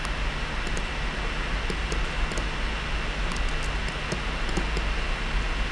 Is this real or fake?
real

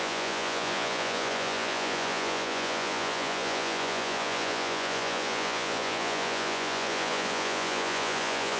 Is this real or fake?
fake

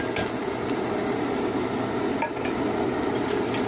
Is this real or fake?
real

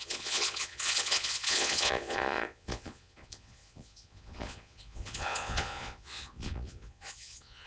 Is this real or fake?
fake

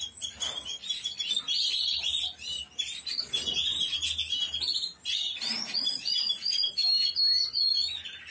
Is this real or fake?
real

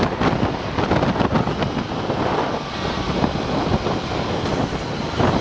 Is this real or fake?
real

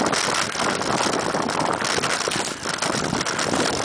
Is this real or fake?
real